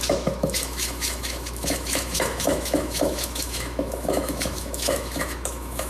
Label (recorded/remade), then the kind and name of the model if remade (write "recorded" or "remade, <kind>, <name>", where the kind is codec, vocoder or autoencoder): remade, autoencoder, DAC-VAE